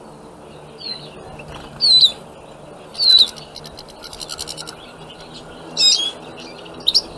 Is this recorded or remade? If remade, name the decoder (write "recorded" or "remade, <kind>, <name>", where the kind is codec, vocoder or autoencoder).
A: recorded